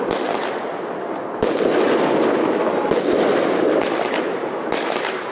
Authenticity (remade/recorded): recorded